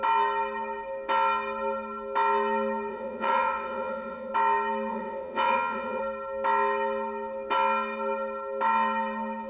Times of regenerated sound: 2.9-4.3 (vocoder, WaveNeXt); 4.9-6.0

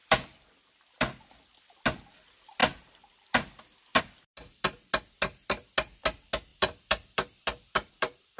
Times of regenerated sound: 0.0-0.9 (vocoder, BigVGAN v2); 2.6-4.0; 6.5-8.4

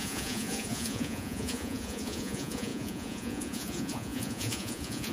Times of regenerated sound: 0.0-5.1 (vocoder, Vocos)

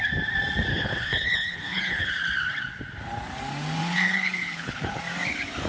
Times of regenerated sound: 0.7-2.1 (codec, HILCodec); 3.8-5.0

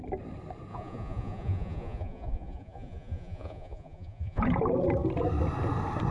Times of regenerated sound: 0.7-4.4 (vocoder, Vocos)

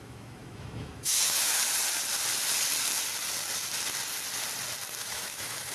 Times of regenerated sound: 0.0-1.6 (autoencoder, DAC-VAE); 5.0-5.7

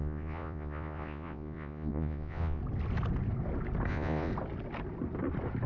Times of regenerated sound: 0.0-2.6 (vocoder, Vocos); 3.9-4.3

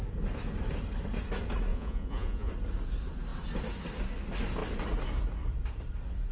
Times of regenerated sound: 1.7-2.5 (vocoder, Vocos)